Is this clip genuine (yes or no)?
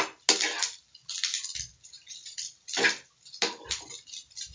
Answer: yes